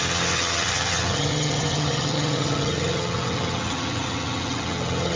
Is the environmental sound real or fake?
fake